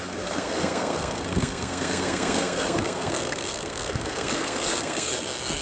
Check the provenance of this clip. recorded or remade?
remade